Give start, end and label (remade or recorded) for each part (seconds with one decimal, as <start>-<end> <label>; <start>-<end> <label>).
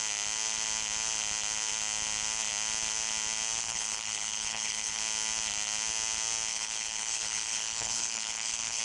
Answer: 0.0-3.6 recorded; 3.6-5.0 remade; 5.0-6.5 recorded; 6.5-8.8 remade